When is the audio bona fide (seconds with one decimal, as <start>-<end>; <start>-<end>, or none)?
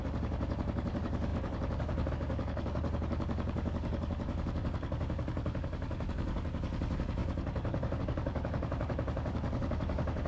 none